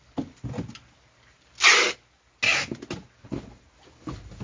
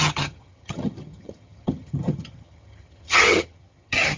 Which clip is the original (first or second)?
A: first